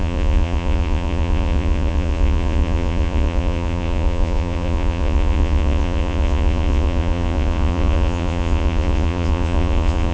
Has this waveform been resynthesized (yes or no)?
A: yes